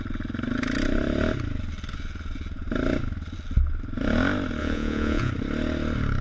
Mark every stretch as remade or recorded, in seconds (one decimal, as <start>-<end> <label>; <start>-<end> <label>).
0.0-4.6 recorded; 4.6-5.3 remade; 5.3-6.2 recorded